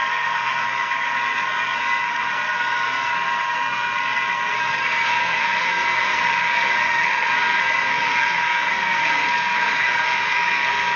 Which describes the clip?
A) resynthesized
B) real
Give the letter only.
A